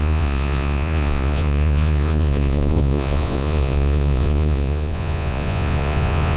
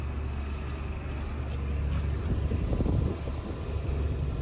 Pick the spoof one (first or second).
first